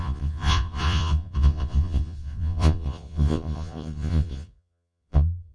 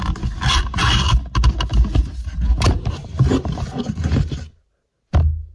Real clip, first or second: second